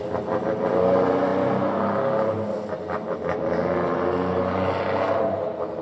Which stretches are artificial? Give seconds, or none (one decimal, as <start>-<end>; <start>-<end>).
none